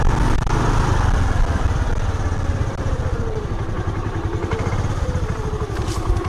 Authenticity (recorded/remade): recorded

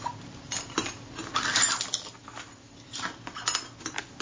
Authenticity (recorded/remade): recorded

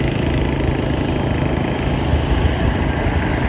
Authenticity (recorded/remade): recorded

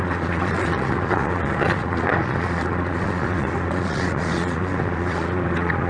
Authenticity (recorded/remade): remade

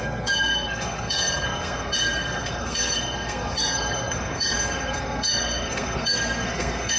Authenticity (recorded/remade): remade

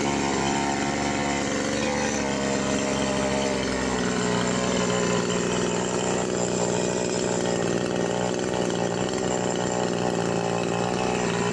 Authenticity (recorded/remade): recorded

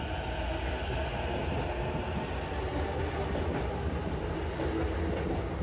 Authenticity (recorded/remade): recorded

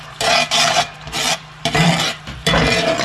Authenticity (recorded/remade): recorded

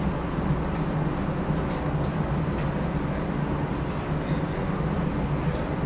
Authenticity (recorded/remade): recorded